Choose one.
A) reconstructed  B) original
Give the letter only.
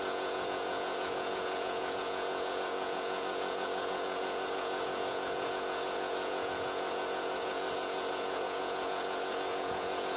A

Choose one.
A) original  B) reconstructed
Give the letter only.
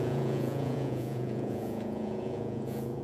B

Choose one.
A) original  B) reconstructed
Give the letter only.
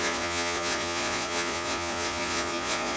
B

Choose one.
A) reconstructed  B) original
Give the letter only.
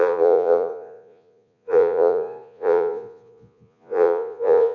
A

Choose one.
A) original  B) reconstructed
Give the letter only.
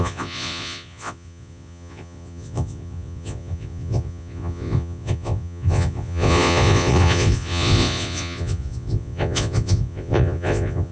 B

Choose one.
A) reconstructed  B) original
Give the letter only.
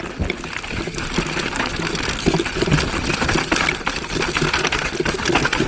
B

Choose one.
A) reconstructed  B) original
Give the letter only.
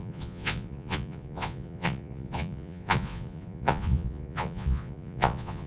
A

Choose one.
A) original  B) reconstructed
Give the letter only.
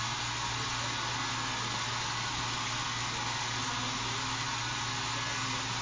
A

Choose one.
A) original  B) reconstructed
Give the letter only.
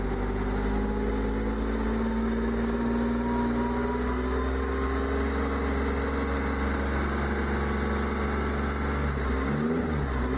A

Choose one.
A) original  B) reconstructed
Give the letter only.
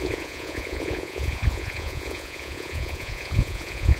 B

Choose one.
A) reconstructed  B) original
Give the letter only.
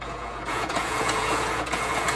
A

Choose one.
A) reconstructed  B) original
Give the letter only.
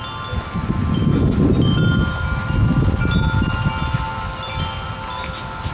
B